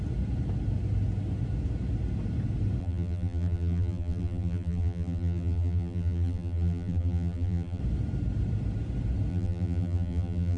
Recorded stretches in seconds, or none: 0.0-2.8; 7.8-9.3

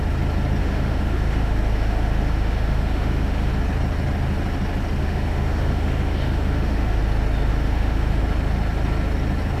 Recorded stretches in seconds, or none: 0.0-0.6; 3.5-5.0; 7.0-7.5; 8.2-9.6

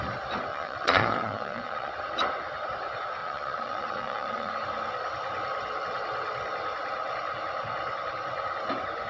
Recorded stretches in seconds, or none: 0.0-0.5; 1.9-3.2; 4.5-9.1

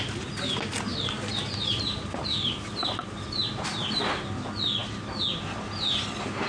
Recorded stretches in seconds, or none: 0.0-0.9; 4.1-6.5

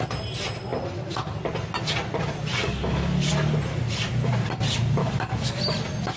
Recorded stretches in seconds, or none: 0.0-2.6; 3.3-5.0; 5.6-6.2

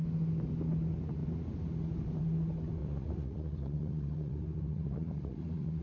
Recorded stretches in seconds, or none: 0.0-2.8